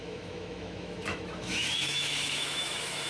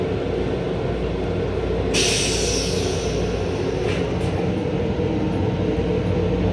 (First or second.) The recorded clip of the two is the second